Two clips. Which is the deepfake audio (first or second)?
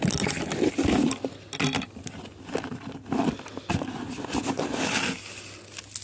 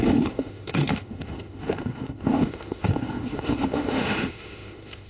second